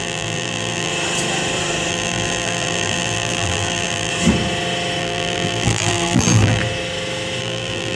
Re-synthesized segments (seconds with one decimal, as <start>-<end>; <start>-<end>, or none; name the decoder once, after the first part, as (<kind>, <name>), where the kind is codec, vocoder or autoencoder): 0.0-0.9 (vocoder, BigVGAN v2); 1.9-4.1; 5.0-6.6; 7.4-7.9